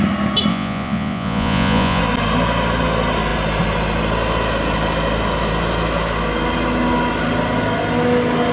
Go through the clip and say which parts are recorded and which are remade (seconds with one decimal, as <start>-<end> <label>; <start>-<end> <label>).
0.0-0.5 recorded; 0.5-2.0 remade; 2.0-8.5 recorded